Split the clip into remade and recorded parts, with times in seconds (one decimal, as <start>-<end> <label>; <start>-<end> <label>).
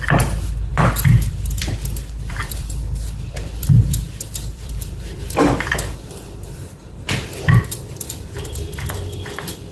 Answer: 0.0-0.7 recorded; 0.7-5.7 remade; 5.7-9.7 recorded